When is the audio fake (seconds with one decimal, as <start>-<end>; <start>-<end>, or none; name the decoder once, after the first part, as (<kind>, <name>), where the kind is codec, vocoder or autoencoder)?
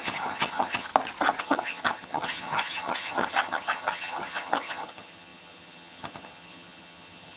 0.0-0.9 (vocoder, HiFi-GAN); 1.4-7.4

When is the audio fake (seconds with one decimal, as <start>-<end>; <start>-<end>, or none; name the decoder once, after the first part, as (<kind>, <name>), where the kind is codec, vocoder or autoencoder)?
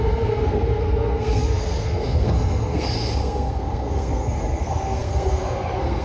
0.0-6.0 (codec, SNAC)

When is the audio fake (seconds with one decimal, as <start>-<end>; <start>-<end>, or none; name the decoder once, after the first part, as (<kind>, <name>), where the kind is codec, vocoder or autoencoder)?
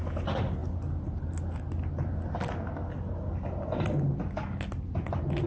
none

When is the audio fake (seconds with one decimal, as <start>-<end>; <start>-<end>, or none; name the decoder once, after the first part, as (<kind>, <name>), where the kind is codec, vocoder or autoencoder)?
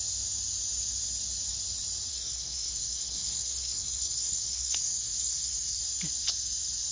2.1-5.8 (codec, SNAC)